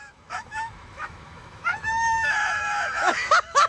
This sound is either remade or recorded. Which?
remade